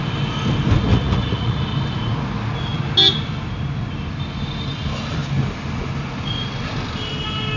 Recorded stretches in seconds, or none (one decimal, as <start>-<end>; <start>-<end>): 0.0-0.9; 1.6-7.6